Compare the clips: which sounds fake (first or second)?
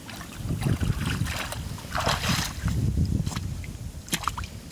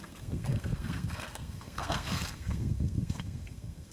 second